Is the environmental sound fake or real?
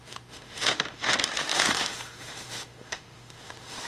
fake